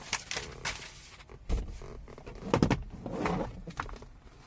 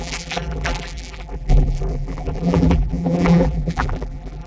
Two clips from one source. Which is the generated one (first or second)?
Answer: second